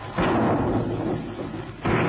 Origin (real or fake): real